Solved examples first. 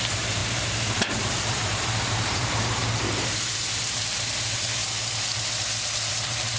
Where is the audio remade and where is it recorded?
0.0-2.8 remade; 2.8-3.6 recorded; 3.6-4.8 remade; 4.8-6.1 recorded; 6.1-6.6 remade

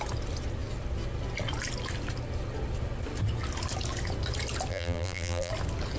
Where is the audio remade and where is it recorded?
0.0-4.7 recorded; 4.7-5.5 remade; 5.5-6.0 recorded